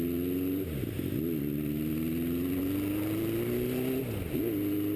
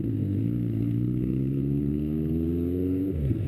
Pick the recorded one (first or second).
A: first